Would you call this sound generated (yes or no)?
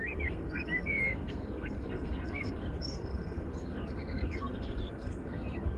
yes